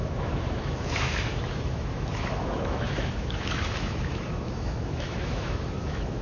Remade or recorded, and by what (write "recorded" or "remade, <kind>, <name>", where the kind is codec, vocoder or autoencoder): remade, autoencoder, DAC-VAE